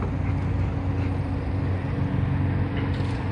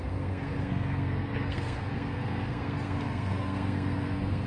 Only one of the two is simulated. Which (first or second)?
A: second